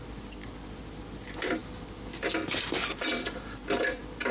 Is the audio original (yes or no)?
yes